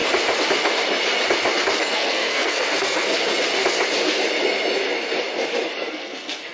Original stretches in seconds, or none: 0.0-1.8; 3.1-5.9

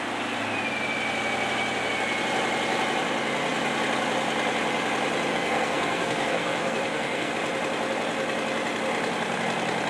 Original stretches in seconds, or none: 0.0-5.3; 7.3-9.9

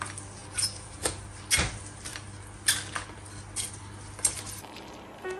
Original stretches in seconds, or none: 0.0-0.4; 1.2-5.4

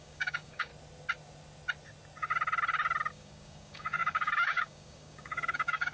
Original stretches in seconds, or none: 0.7-3.1

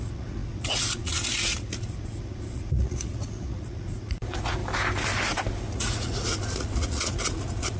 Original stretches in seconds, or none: 4.6-5.6

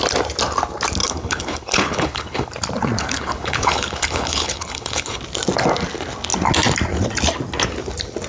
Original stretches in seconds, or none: 0.0-1.0; 2.5-3.0; 5.2-8.3

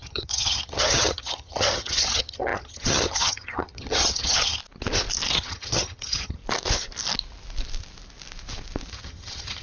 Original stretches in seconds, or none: 4.6-5.3; 6.4-8.9

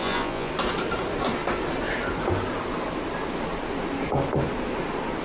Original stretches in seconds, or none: 0.5-5.2